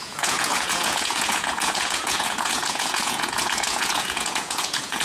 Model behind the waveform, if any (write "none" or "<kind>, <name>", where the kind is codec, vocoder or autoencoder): vocoder, Vocos